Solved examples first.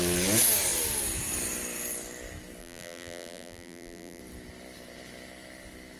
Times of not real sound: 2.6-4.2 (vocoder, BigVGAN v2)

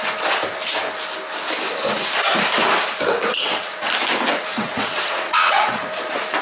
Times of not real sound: 3.3-3.9 (vocoder, WaveNeXt); 4.5-5.8

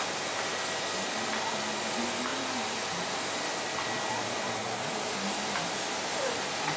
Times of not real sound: none

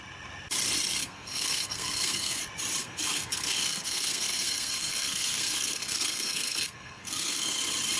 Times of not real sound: 1.0-2.4 (codec, SNAC); 2.8-7.6

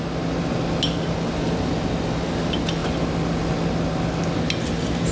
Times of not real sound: none

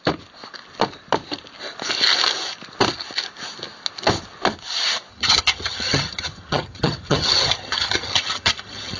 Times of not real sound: 5.1-9.0 (vocoder, HiFi-GAN)

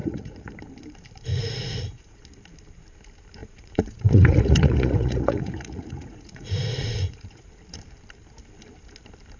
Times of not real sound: 0.0-0.5 (vocoder, Vocos); 1.3-2.2; 3.4-7.5

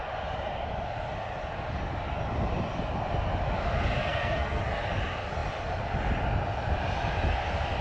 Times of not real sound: 4.0-4.6 (codec, SNAC)